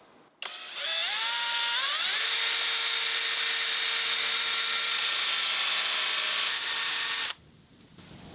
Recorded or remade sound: recorded